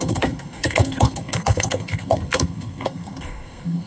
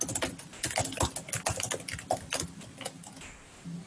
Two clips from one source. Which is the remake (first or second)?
first